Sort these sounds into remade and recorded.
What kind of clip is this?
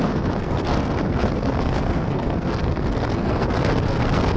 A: remade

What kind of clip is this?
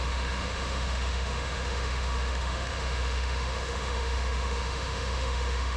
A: remade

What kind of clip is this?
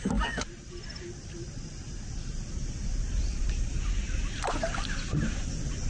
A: recorded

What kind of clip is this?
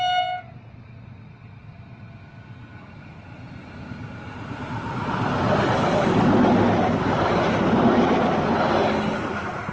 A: recorded